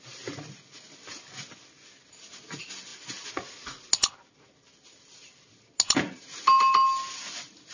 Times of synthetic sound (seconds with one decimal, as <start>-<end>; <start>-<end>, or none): none